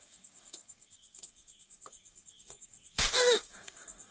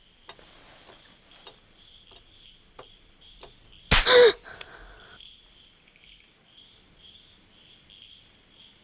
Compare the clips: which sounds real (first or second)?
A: second